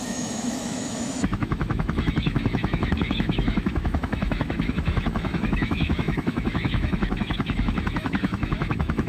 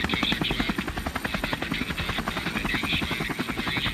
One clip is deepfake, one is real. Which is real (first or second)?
second